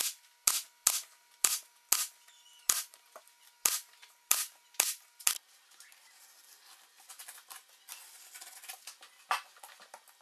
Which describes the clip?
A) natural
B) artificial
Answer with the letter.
A